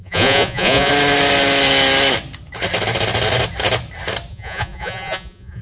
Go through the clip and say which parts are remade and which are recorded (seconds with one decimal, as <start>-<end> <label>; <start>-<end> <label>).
0.0-0.9 remade; 0.9-4.3 recorded; 4.3-5.6 remade